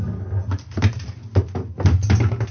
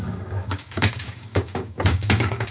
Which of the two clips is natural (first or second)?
first